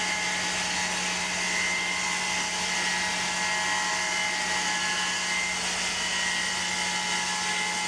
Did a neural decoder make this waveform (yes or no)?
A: no